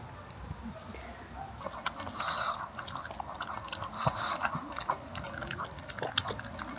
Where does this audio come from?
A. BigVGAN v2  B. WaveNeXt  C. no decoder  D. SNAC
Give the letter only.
C